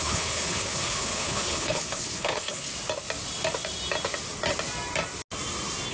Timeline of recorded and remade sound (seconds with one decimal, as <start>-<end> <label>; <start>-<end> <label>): 0.0-2.7 remade; 2.7-5.9 recorded